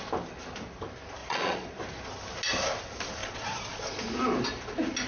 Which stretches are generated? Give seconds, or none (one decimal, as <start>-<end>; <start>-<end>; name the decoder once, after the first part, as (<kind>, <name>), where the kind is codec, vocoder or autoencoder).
1.2-1.8 (vocoder, Vocos); 3.2-4.1